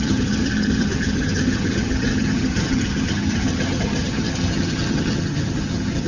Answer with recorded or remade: remade